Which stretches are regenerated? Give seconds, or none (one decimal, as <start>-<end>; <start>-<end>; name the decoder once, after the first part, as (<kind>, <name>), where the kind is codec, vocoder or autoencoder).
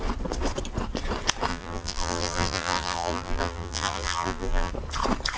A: 1.5-4.7 (vocoder, BigVGAN v2)